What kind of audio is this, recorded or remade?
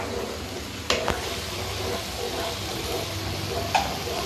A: recorded